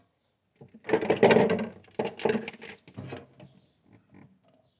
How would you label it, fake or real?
real